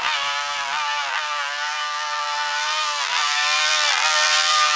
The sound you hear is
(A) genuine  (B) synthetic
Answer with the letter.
B